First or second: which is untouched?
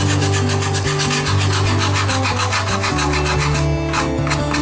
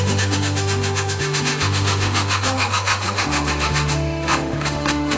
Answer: first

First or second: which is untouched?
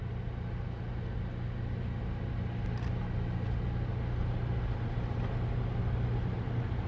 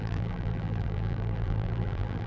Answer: first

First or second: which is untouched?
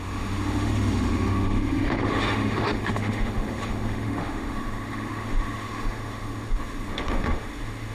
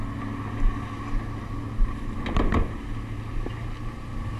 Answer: second